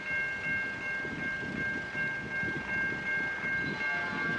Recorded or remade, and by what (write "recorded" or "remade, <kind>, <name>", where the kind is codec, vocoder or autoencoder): recorded